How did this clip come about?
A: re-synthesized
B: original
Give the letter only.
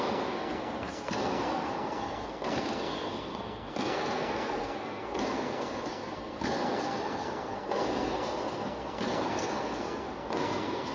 A